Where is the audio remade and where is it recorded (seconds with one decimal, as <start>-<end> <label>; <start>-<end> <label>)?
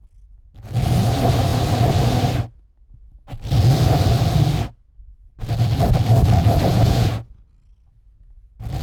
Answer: 0.0-6.7 recorded; 6.7-7.5 remade; 7.5-8.8 recorded